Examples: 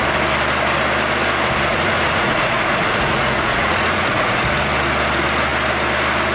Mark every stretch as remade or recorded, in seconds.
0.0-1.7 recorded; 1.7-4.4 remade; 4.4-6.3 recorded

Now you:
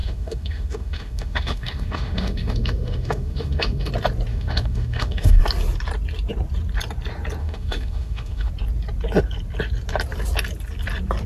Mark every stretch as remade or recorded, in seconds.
0.0-3.9 remade; 3.9-4.3 recorded; 4.3-5.4 remade; 5.4-7.4 recorded; 7.4-8.5 remade; 8.5-11.3 recorded

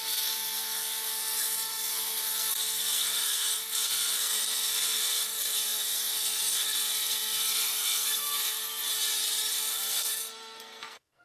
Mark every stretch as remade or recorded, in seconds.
0.0-8.6 remade; 8.6-9.5 recorded; 9.5-11.2 remade

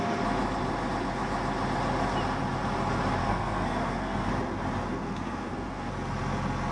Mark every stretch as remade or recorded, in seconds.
0.0-3.2 recorded; 3.2-4.3 remade; 4.3-4.9 recorded; 4.9-5.9 remade; 5.9-6.7 recorded

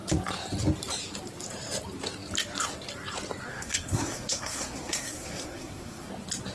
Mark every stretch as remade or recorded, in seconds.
0.0-3.5 recorded; 3.5-6.1 remade; 6.1-6.5 recorded

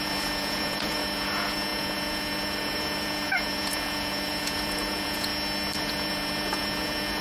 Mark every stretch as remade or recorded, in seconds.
0.0-5.3 remade; 5.3-5.8 recorded; 5.8-7.2 remade